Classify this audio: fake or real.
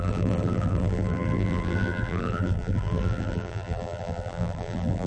fake